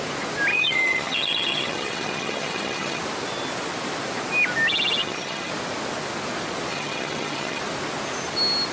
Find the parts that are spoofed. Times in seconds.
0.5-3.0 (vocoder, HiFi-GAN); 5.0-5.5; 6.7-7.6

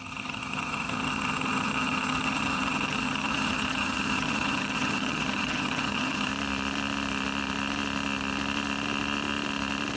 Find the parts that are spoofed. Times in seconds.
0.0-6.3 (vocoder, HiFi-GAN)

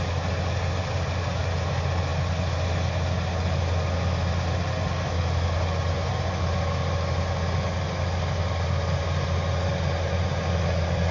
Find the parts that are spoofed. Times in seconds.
none